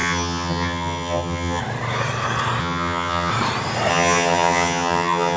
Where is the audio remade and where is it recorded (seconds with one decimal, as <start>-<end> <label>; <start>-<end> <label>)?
0.0-1.6 remade; 1.6-2.6 recorded; 2.6-3.3 remade; 3.3-3.9 recorded; 3.9-5.4 remade